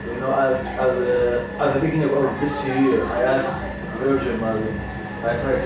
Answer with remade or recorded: recorded